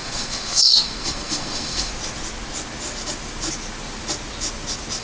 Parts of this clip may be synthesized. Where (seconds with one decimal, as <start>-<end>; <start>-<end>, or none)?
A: 0.0-1.9